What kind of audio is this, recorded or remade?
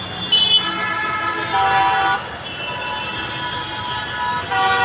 recorded